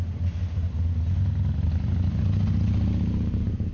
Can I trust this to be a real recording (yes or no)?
yes